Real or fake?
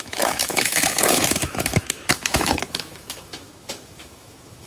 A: fake